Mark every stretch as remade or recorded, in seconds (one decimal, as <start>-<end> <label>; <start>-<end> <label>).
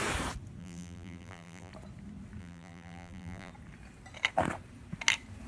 0.0-0.6 recorded; 0.6-1.7 remade; 1.7-2.4 recorded; 2.4-3.5 remade; 3.5-5.5 recorded